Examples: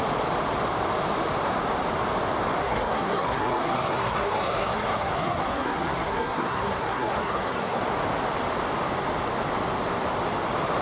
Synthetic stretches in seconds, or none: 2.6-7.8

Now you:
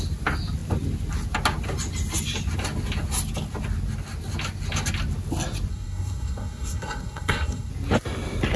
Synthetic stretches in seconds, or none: 5.7-7.7

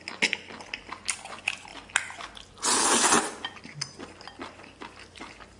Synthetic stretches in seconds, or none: none

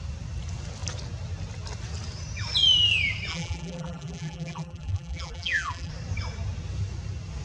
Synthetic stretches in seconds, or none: 3.3-5.9

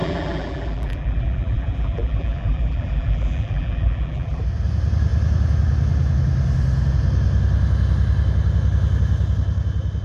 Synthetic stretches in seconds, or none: 0.0-4.4

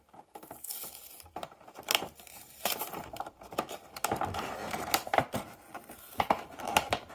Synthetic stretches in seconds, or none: 1.4-3.6; 4.6-7.1

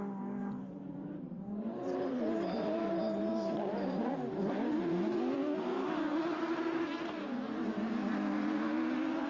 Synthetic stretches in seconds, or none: 0.4-4.1; 6.1-7.9